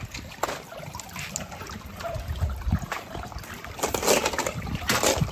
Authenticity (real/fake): real